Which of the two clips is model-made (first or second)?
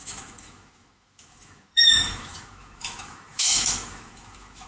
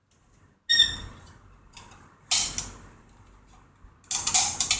first